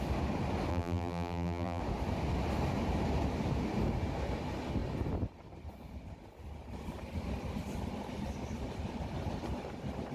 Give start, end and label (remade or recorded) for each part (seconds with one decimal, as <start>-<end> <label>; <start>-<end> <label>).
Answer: 0.0-0.7 recorded; 0.7-1.8 remade; 1.8-10.1 recorded